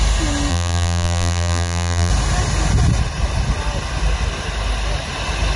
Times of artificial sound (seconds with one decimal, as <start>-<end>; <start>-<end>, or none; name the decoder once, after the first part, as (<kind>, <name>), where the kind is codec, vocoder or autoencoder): 0.5-2.1 (vocoder, BigVGAN v2)